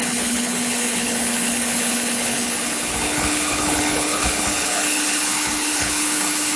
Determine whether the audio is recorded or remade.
remade